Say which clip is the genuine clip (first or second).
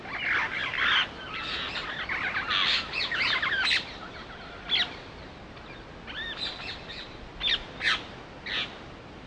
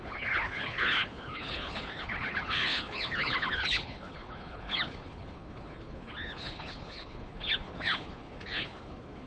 first